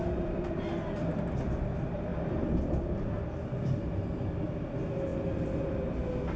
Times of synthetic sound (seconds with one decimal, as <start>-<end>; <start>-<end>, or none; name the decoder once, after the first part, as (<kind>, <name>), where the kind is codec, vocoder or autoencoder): 0.0-0.6 (vocoder, BigVGAN v2)